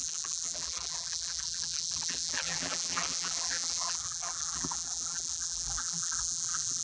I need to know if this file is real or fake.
fake